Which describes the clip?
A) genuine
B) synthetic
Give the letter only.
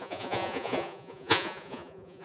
B